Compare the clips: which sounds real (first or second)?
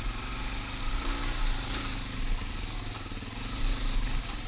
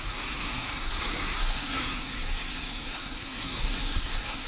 first